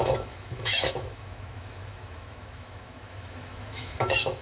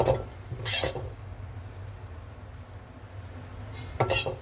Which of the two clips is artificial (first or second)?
first